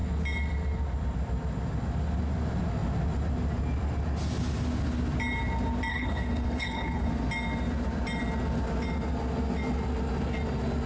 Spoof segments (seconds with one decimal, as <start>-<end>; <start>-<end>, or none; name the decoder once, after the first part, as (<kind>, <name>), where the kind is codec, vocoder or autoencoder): 5.9-7.1 (codec, HILCodec)

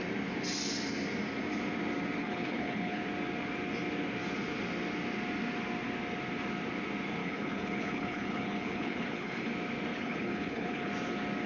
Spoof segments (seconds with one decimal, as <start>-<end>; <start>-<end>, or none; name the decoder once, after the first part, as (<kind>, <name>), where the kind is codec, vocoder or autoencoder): 2.2-3.0 (codec, HILCodec); 7.2-9.5; 9.9-10.9

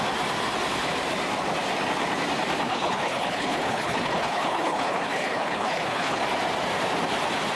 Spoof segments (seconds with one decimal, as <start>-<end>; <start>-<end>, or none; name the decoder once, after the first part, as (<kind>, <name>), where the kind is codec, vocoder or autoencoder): 2.7-6.2 (codec, HILCodec)

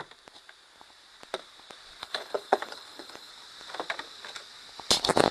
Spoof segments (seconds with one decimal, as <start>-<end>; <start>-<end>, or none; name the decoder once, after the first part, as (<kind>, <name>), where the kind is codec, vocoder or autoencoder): 2.0-3.3 (codec, HILCodec)

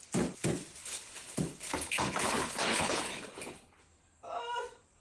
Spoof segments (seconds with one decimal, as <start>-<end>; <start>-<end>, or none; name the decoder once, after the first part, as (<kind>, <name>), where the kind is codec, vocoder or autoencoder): 0.8-3.8 (codec, HILCodec)